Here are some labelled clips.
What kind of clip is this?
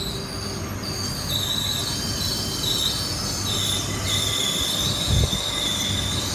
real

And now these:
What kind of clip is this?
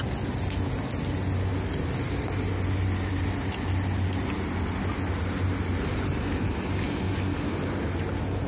real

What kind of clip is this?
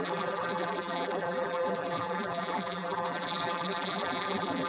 fake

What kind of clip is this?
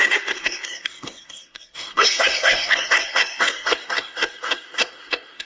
fake